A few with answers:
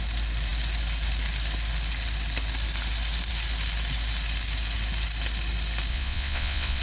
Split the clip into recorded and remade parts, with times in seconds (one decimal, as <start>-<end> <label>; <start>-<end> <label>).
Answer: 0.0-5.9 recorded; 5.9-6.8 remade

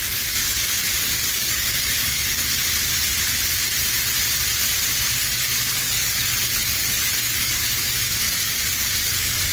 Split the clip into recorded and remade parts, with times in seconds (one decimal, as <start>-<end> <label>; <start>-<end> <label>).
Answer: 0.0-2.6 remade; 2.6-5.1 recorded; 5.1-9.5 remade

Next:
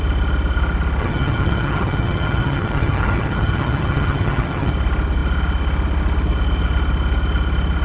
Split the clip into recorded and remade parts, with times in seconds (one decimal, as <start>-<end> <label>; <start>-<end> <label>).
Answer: 0.0-1.0 recorded; 1.0-4.7 remade; 4.7-7.8 recorded